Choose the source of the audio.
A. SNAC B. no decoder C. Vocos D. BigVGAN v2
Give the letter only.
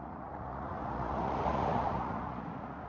C